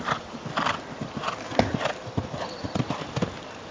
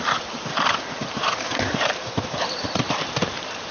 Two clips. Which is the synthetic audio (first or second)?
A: second